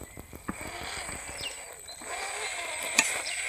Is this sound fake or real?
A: real